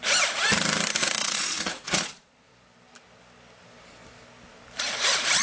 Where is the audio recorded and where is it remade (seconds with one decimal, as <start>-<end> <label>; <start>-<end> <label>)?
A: 0.0-1.2 recorded; 1.2-2.5 remade; 2.5-5.4 recorded